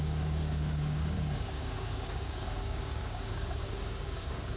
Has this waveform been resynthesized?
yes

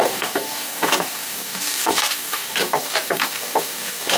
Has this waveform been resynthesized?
yes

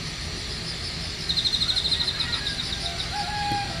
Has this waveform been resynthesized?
no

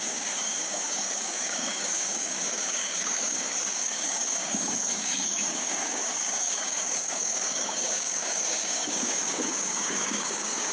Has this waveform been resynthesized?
yes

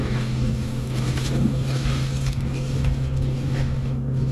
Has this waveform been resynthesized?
yes